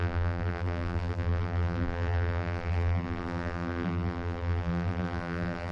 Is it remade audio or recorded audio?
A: remade